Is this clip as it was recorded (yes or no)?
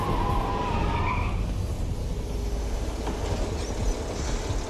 yes